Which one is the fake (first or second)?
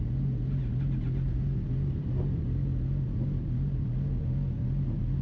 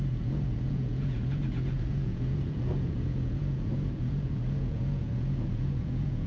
second